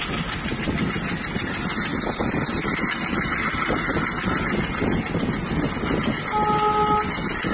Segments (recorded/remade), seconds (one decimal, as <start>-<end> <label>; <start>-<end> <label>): 0.0-7.5 recorded